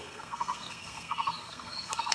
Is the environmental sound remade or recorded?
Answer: remade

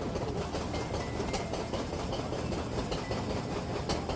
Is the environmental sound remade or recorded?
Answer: recorded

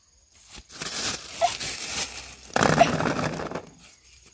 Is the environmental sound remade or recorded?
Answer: recorded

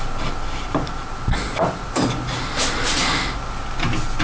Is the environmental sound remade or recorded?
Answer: recorded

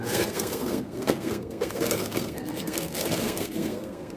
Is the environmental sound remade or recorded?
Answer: remade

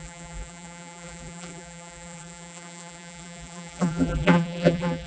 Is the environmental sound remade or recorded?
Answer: remade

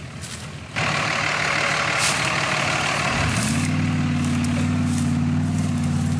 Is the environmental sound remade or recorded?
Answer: recorded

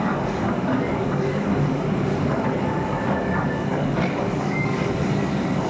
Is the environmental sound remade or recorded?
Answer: remade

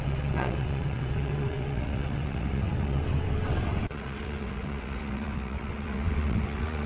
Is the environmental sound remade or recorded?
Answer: remade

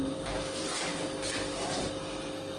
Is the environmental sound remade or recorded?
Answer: recorded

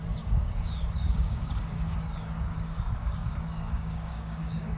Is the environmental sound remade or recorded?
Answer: remade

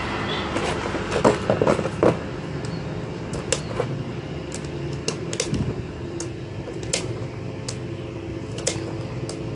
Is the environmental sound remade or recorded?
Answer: recorded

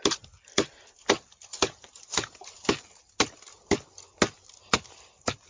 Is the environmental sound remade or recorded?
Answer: recorded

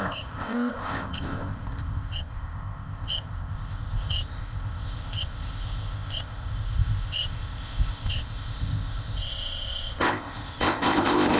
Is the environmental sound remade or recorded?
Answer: remade